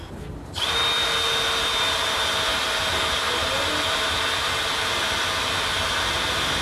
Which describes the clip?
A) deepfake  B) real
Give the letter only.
B